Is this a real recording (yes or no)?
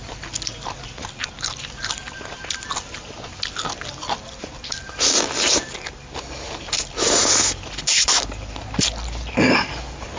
yes